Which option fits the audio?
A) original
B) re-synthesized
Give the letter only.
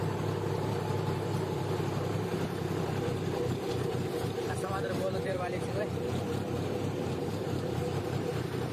B